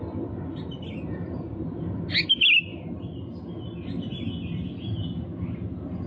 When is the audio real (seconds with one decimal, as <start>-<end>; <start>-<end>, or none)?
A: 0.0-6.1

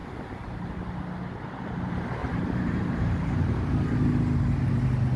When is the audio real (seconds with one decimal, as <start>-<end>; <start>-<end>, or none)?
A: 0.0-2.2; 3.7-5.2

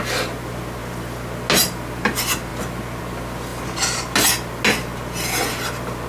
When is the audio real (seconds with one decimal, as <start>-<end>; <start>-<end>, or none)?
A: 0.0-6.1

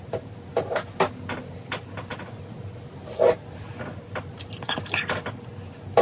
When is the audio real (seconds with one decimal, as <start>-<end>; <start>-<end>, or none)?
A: 0.0-6.0

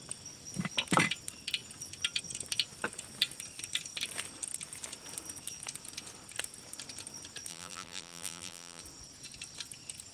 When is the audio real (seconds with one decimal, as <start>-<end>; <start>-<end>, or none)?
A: 0.0-7.5; 8.8-10.1

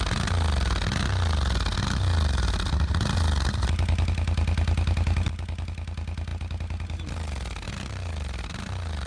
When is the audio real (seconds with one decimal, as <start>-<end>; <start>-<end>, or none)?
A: 0.0-9.1

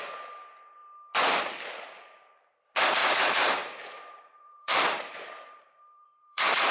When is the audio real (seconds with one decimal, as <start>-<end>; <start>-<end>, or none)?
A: 0.0-3.0